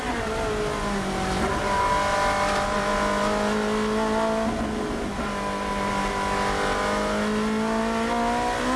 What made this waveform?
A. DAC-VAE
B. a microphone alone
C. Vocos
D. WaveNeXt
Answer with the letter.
B